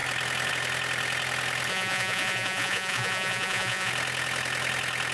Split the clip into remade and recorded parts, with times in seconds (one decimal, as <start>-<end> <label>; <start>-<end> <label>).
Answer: 0.0-1.7 recorded; 1.7-3.9 remade; 3.9-5.1 recorded